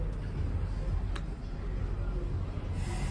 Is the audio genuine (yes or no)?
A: yes